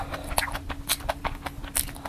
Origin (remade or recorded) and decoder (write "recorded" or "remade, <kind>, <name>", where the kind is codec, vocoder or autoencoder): recorded